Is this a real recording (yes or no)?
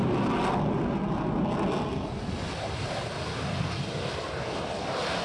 yes